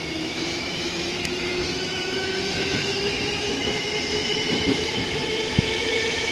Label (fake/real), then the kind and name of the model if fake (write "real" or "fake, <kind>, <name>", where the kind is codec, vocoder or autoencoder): fake, autoencoder, DAC-VAE